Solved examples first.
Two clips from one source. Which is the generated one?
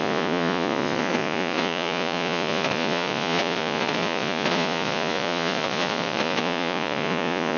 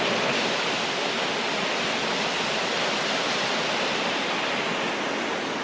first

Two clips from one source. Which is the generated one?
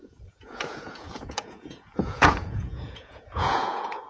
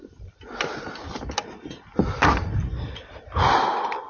first